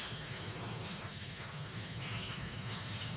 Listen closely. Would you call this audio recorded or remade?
remade